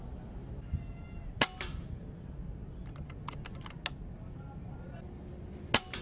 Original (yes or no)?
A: yes